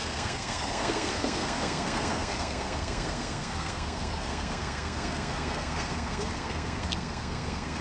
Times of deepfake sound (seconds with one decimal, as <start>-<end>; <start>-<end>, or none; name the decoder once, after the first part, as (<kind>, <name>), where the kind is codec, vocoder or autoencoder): 0.0-7.8 (codec, SNAC)